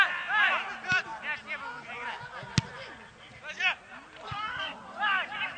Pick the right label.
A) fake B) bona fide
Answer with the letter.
B